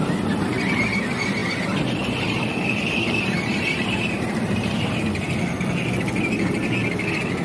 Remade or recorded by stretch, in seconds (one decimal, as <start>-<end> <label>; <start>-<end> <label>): 0.0-1.4 recorded; 1.4-5.0 remade; 5.0-7.4 recorded